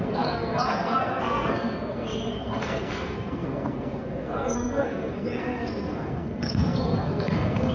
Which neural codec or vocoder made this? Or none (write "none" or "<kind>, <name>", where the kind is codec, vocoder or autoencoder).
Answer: codec, SNAC